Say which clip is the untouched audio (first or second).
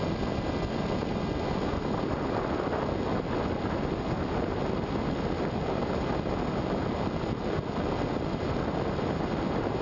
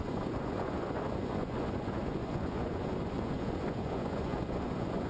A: first